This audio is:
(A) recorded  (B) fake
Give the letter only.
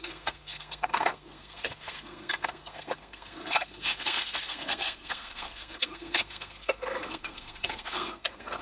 B